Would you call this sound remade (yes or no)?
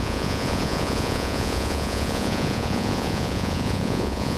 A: yes